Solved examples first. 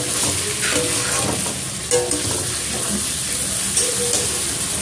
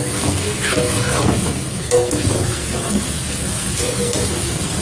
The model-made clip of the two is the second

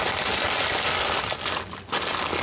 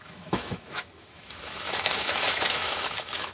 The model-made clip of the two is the second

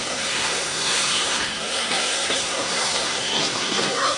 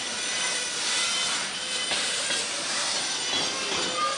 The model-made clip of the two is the first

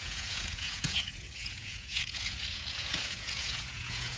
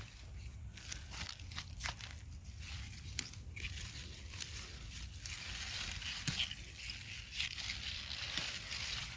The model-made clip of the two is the first